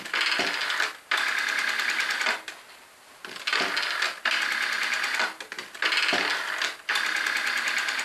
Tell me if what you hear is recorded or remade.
recorded